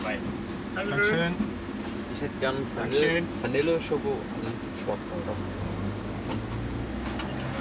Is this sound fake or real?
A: real